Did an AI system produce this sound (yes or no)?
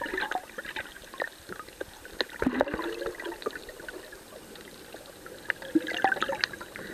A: no